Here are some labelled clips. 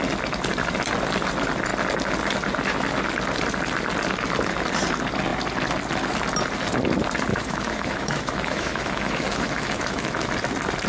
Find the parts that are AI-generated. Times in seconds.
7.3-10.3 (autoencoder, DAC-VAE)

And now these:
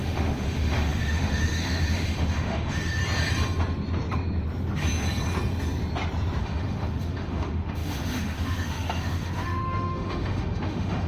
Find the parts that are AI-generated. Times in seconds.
0.0-3.0 (autoencoder, DAC-VAE); 6.4-11.1

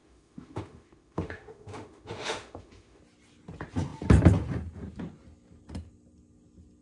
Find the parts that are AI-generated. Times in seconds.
0.0-3.0 (autoencoder, DAC-VAE)

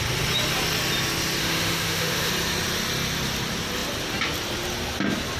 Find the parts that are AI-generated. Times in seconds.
1.4-2.3 (autoencoder, DAC-VAE)

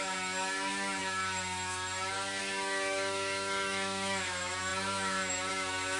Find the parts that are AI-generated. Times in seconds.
0.0-6.0 (autoencoder, DAC-VAE)

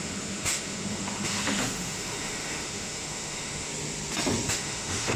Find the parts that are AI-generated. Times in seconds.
0.0-3.7 (autoencoder, DAC-VAE); 4.5-5.2

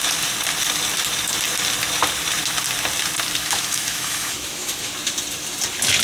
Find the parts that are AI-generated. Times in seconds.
3.4-4.9 (autoencoder, DAC-VAE)